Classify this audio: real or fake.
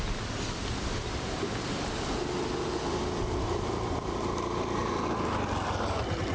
real